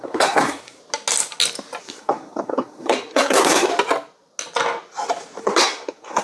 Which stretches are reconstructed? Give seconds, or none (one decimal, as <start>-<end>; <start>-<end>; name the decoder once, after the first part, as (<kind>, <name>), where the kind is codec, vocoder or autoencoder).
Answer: 0.0-0.8 (codec, SNAC); 1.8-3.7; 5.4-6.2